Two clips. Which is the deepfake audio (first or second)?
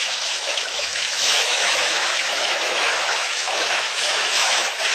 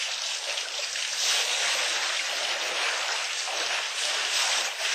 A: first